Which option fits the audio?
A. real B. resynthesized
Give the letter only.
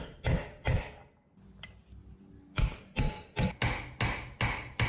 A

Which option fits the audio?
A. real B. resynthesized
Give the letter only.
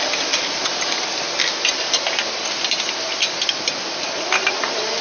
A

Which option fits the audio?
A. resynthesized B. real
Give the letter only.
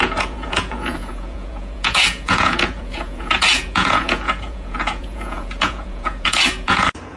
A